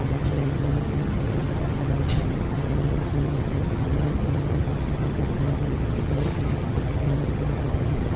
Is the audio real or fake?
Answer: fake